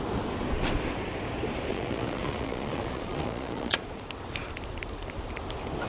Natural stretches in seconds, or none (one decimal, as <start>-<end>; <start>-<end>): 0.0-1.7; 4.0-5.9